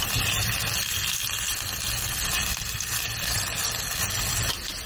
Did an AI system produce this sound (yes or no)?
no